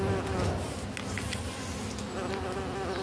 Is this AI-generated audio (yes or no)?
no